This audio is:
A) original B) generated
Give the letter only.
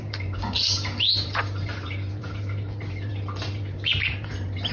B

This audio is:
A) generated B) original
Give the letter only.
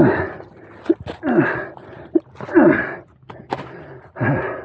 B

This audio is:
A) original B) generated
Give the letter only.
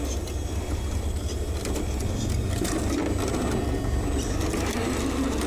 A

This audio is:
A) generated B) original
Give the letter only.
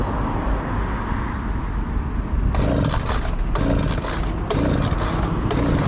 B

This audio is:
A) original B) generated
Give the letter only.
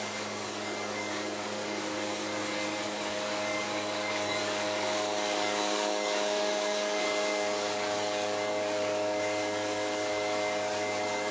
B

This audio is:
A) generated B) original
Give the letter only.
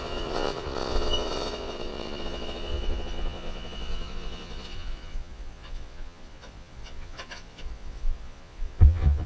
A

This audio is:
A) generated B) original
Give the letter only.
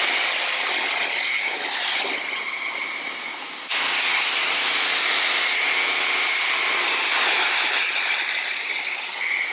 B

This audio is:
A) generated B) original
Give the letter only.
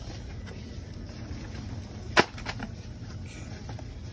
B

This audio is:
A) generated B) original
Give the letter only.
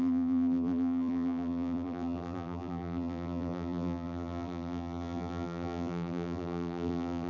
A